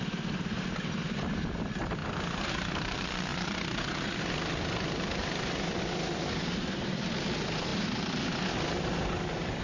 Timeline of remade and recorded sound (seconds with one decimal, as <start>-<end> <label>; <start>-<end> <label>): 0.0-3.3 recorded; 3.3-4.2 remade; 4.2-5.2 recorded; 5.2-5.7 remade; 5.7-9.6 recorded

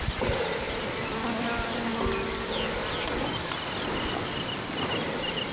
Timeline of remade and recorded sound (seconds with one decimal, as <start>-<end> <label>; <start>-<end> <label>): 0.0-5.5 recorded

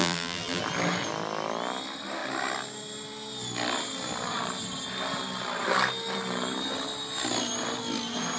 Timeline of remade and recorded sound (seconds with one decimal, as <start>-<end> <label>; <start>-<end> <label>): 0.0-0.6 remade; 0.6-8.4 recorded

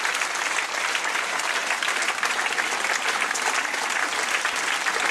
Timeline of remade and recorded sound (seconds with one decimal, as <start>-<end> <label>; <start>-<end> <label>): 0.0-5.1 recorded

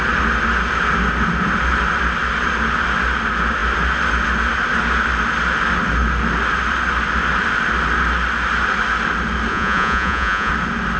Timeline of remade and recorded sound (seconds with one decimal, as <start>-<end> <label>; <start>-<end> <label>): 0.0-9.5 recorded; 9.5-10.5 remade; 10.5-11.0 recorded

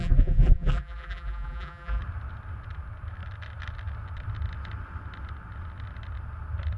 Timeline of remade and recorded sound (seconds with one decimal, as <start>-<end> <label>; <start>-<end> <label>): 0.0-2.0 remade; 2.0-6.8 recorded